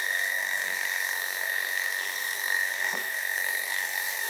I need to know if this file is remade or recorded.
remade